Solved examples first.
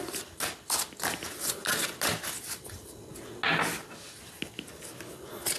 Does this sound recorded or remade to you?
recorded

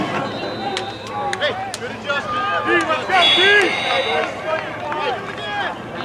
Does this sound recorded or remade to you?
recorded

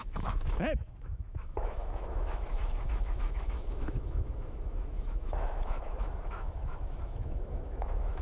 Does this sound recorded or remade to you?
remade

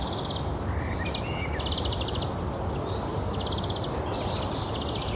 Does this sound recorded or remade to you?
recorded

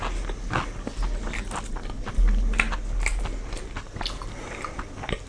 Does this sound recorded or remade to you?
recorded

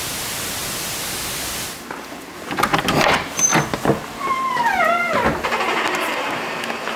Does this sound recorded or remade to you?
recorded